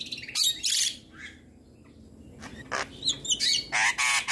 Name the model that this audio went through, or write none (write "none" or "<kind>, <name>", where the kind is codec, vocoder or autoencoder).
none